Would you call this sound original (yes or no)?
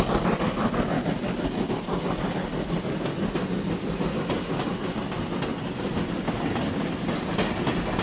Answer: yes